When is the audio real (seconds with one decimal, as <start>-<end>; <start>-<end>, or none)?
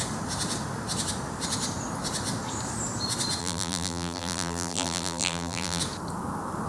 0.0-3.4; 5.8-6.7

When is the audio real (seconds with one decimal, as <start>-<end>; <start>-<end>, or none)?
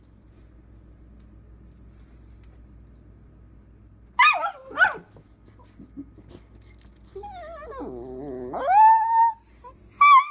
0.0-10.3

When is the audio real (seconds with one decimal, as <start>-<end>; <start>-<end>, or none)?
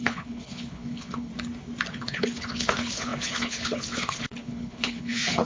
1.3-1.9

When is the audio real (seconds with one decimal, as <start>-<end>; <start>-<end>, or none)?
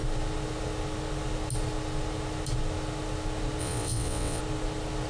0.0-3.6; 4.4-5.1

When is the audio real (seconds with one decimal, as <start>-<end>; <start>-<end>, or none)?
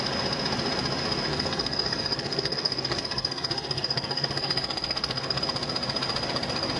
0.0-1.3; 5.4-6.8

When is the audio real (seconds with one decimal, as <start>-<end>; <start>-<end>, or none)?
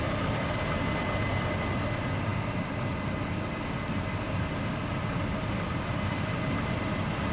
0.0-7.3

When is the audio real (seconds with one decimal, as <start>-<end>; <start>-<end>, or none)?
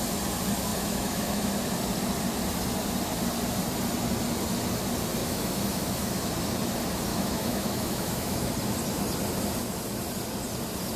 0.0-0.7; 1.5-5.2; 6.3-7.1; 8.5-11.0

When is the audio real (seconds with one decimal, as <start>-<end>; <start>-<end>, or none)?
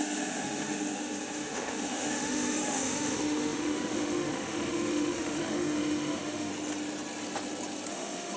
6.5-7.9